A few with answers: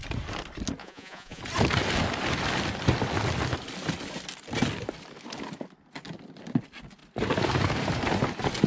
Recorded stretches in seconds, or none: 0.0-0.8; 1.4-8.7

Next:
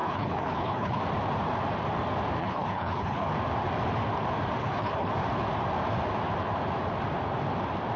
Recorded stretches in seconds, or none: 1.0-2.4; 3.3-4.6; 5.1-8.0

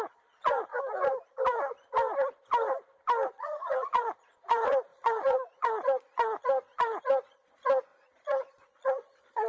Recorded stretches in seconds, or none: 0.7-3.3

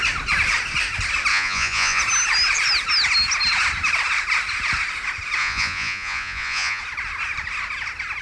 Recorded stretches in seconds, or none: 0.0-1.3; 2.0-5.4; 6.8-8.2

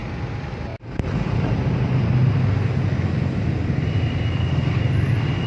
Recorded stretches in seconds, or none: 0.0-5.5